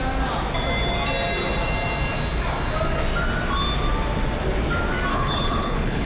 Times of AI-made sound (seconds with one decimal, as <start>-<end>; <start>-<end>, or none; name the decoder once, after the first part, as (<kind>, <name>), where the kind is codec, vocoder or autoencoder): 5.1-6.1 (codec, HILCodec)